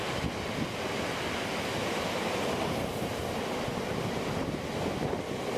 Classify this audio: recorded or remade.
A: recorded